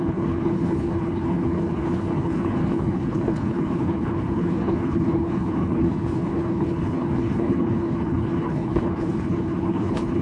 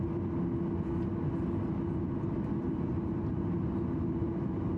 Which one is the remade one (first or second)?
first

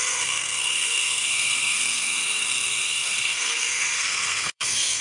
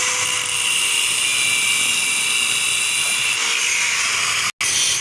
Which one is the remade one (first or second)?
first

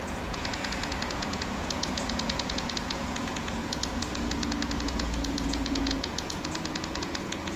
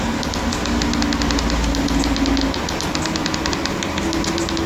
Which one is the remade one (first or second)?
first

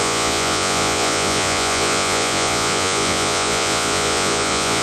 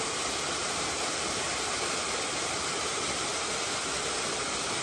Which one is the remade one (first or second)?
first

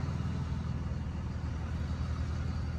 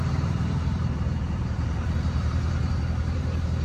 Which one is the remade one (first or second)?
second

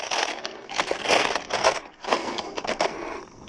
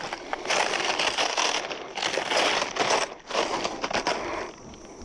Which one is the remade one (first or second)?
first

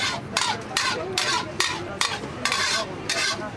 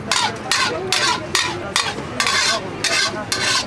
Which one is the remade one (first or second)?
first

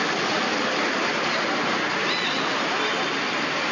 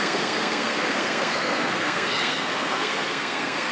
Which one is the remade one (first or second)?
second